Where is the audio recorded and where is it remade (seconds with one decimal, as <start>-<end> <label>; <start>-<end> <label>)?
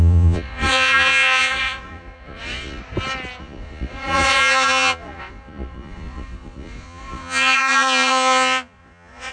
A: 0.0-2.8 remade; 2.8-3.4 recorded; 3.4-9.3 remade